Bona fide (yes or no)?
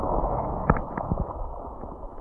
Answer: no